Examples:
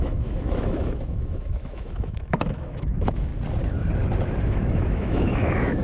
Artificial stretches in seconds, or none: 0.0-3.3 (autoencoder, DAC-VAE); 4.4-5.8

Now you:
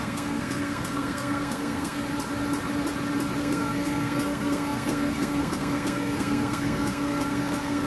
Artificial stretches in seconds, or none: 0.0-2.0 (codec, SNAC); 3.4-7.9

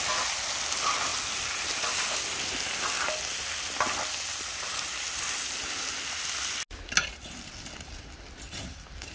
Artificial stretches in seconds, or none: none

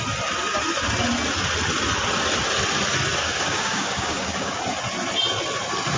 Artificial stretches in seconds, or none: 3.2-4.6 (codec, DAC)

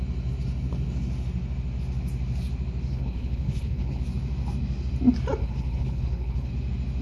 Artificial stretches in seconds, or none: 2.9-4.0 (codec, HILCodec); 5.4-6.5